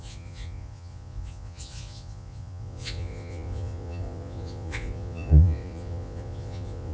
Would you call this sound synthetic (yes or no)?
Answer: yes